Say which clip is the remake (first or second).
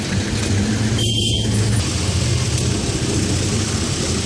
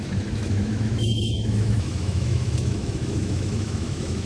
second